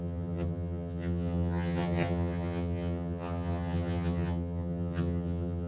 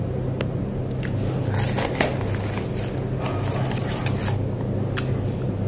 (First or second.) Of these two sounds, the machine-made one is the first